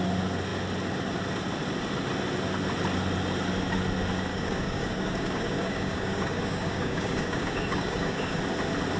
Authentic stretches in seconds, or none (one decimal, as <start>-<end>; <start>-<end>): 0.0-4.3; 8.4-9.0